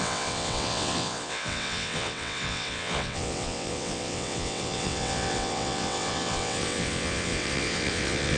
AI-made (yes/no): yes